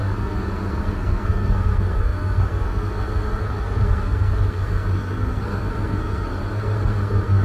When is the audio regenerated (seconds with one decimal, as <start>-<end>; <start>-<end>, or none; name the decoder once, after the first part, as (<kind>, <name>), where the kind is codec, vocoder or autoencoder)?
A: 0.0-7.4 (codec, SNAC)